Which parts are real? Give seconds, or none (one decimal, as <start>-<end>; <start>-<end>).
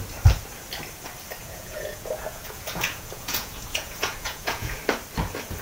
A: 0.0-1.4; 4.8-5.6